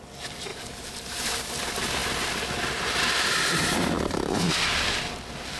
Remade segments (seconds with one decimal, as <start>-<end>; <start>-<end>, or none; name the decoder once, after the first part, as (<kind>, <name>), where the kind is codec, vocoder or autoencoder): 0.5-1.3 (vocoder, BigVGAN v2); 3.6-4.4